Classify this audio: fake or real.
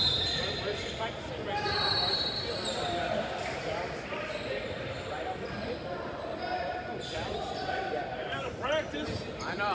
real